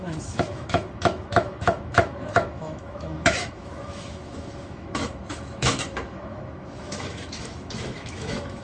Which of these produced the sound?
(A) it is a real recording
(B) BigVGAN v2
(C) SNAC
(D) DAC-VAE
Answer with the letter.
D